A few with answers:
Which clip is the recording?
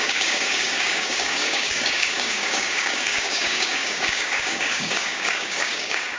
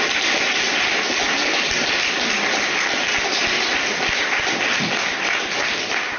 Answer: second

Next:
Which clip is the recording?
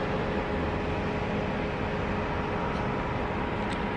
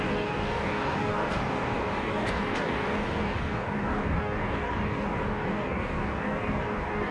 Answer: first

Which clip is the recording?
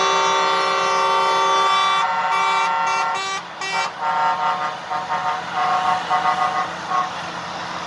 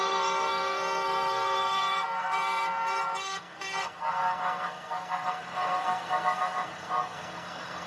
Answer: first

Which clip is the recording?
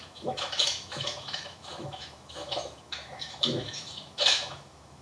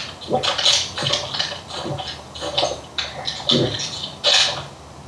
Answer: second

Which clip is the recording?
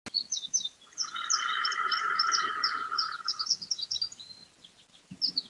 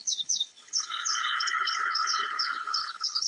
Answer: first